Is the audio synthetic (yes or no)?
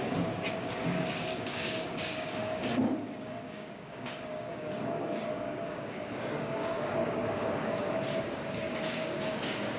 yes